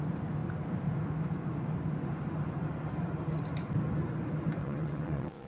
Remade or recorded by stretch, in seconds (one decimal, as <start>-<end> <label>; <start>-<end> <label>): 0.0-4.6 recorded; 4.6-5.5 remade